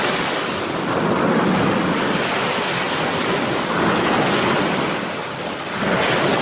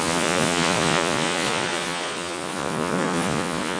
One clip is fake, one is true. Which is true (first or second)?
first